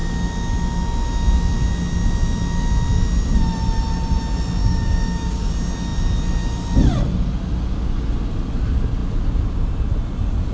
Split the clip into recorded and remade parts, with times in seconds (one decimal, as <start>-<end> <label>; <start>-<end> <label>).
0.0-4.6 recorded; 4.6-5.5 remade; 5.5-10.5 recorded